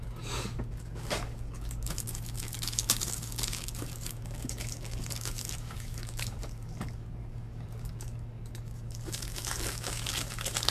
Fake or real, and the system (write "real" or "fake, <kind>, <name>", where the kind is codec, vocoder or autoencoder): fake, codec, DAC